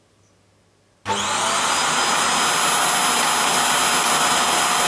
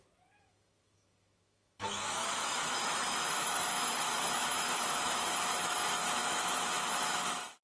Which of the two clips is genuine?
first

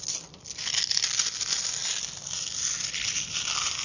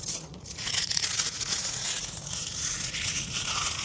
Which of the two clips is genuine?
first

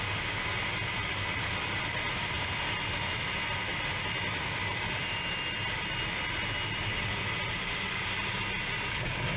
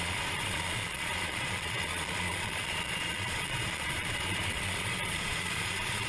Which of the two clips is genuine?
first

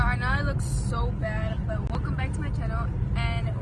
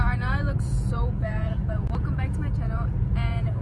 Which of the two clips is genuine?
first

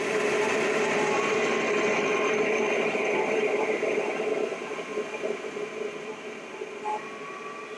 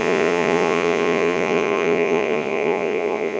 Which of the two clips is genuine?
first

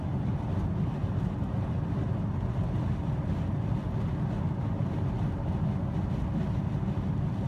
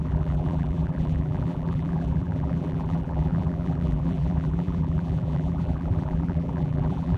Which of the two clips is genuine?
first